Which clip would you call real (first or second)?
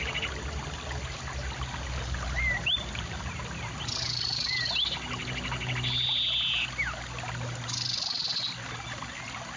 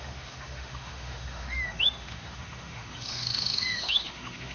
first